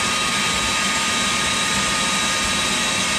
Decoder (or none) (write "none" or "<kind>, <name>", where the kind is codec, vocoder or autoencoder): none